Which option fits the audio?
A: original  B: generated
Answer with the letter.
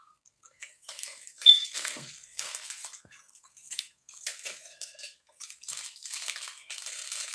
B